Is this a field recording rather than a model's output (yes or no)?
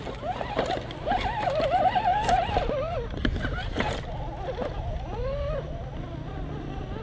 yes